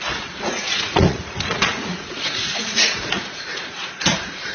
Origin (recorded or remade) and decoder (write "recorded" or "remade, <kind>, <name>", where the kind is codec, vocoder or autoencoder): remade, vocoder, Vocos